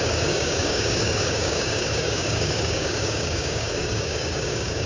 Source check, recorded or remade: remade